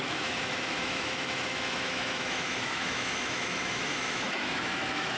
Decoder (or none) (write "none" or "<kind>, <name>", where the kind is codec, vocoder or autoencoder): autoencoder, DAC-VAE